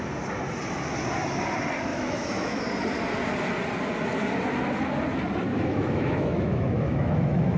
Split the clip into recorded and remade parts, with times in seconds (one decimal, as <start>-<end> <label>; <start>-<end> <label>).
0.0-1.9 recorded; 1.9-2.6 remade; 2.6-5.5 recorded; 5.5-7.6 remade